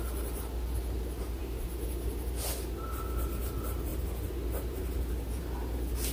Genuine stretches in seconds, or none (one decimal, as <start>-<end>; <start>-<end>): 1.4-3.0

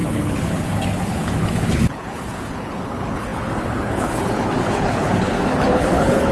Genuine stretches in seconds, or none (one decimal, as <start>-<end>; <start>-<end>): none

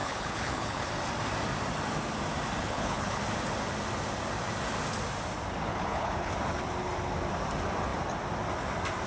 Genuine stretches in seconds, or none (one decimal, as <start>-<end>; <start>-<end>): 0.9-2.6; 3.2-5.7; 6.3-9.1

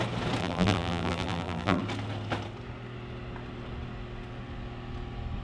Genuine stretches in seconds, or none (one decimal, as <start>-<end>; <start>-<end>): 0.0-0.4; 1.8-5.4

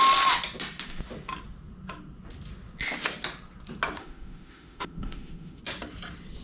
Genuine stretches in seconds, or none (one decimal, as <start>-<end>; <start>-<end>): 0.0-4.0; 5.6-6.4

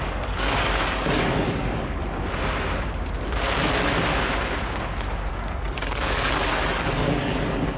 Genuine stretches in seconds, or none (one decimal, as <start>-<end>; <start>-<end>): 2.0-5.3

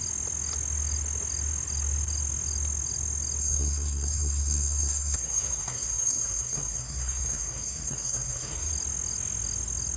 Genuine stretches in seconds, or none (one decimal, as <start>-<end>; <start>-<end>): 0.0-3.4; 8.7-10.0

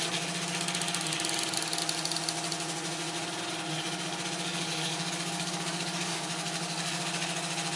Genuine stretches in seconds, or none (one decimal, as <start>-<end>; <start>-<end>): 0.0-4.5; 7.0-7.8